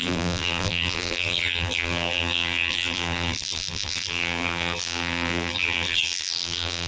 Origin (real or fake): fake